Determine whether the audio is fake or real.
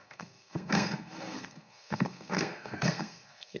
fake